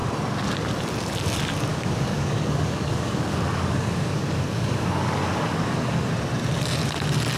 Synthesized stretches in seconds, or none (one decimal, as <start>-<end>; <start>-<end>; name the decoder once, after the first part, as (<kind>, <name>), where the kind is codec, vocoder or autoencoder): 1.7-6.1 (codec, DAC)